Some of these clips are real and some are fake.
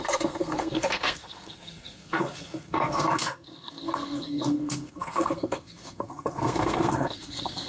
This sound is fake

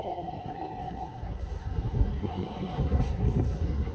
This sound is fake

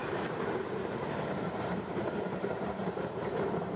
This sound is fake